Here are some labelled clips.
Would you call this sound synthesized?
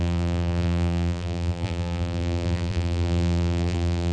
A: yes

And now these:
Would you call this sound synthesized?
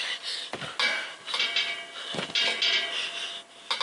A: no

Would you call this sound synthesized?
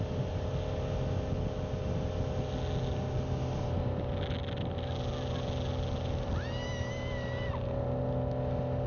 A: no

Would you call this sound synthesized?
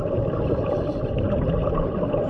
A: yes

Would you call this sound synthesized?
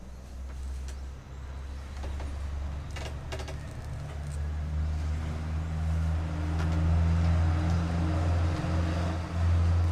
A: no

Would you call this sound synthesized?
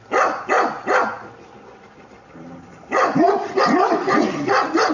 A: no